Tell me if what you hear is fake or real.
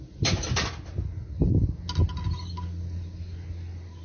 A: real